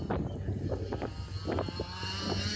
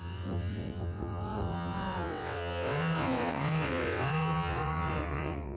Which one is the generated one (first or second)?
second